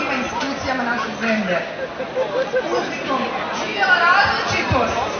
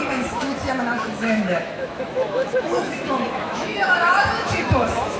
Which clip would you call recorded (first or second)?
first